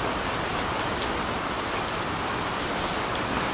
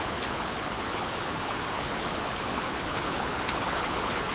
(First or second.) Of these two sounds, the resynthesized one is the second